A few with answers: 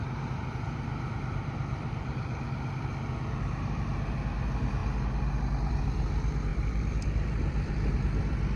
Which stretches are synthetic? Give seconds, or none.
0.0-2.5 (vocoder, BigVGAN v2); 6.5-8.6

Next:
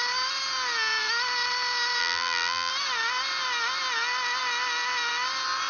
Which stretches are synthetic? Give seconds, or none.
2.0-2.7 (vocoder, BigVGAN v2)

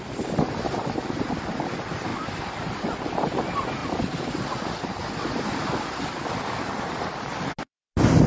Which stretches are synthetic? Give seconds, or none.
none

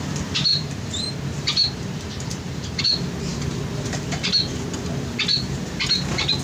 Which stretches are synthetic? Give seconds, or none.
0.5-2.8 (vocoder, BigVGAN v2)

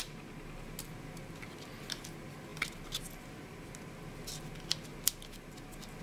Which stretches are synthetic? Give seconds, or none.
none